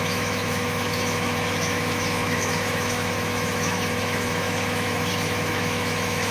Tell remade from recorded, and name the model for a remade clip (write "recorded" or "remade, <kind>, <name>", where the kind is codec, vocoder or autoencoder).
remade, autoencoder, DAC-VAE